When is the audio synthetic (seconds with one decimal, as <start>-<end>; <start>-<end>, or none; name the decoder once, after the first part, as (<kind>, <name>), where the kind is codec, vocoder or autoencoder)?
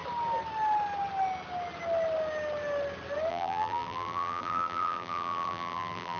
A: 3.3-6.2 (vocoder, BigVGAN v2)